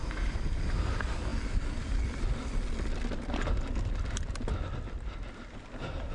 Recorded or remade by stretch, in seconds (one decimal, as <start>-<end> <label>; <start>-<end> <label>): 0.0-6.1 recorded